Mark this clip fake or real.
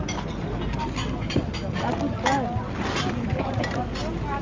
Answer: real